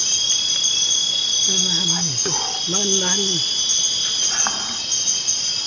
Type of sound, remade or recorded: recorded